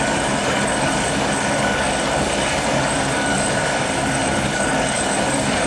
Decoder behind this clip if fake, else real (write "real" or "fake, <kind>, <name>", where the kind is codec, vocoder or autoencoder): fake, codec, DAC